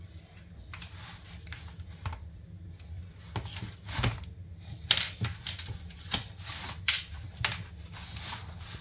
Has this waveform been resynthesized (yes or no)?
no